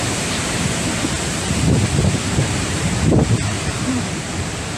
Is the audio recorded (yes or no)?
no